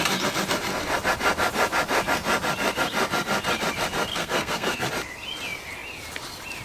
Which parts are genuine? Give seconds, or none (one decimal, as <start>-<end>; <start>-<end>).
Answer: 0.0-4.1; 4.9-6.6